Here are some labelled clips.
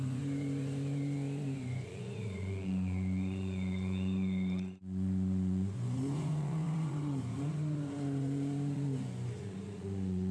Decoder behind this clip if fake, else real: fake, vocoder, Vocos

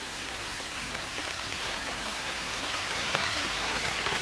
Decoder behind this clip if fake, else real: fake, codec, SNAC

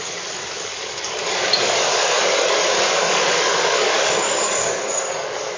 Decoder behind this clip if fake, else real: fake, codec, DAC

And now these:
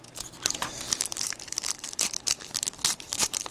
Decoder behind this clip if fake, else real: fake, vocoder, BigVGAN v2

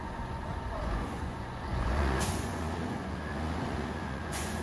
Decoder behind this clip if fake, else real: fake, vocoder, Vocos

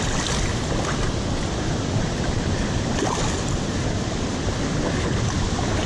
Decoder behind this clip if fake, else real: real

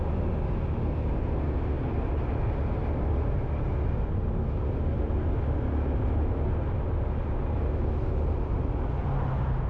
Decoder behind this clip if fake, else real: real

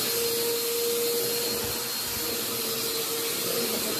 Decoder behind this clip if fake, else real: real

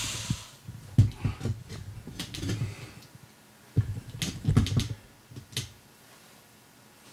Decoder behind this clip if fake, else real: real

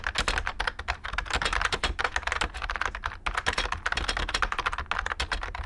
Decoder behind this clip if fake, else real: real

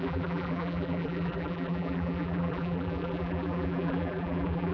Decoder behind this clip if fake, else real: fake, vocoder, BigVGAN v2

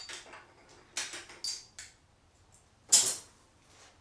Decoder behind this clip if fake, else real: real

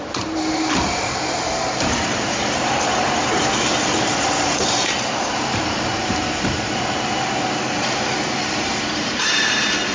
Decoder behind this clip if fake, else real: fake, vocoder, BigVGAN v2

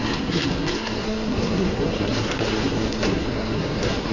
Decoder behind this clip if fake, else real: fake, codec, SNAC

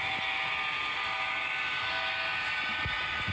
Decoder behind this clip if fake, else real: real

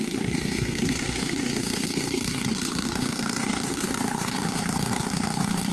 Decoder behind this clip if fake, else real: fake, codec, SNAC